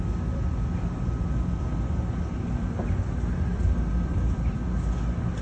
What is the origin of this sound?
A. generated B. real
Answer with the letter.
B